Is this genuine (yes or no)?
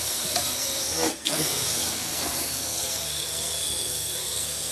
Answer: no